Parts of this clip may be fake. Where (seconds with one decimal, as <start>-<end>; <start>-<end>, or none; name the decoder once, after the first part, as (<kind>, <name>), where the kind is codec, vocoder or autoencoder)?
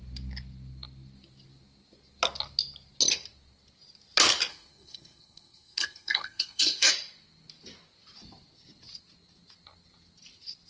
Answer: 4.5-6.9 (codec, SNAC)